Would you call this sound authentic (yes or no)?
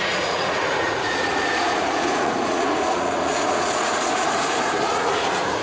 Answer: no